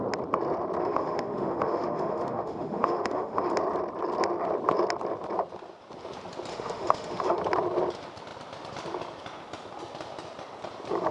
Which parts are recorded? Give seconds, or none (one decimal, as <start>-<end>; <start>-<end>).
0.0-0.8; 3.5-6.5; 7.4-11.1